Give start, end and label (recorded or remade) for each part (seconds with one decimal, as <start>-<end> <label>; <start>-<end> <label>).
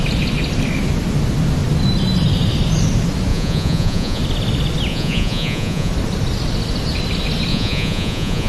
0.0-3.3 recorded; 3.3-4.2 remade; 4.2-4.9 recorded; 4.9-5.9 remade; 5.9-7.5 recorded; 7.5-8.5 remade